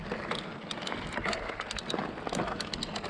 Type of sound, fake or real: real